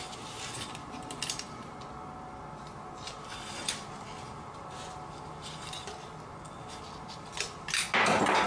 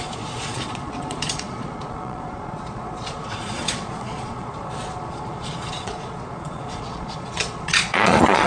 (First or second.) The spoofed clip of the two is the second